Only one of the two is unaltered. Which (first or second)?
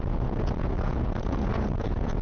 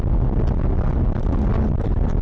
second